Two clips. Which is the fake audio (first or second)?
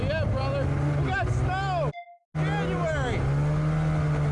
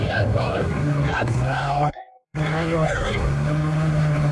second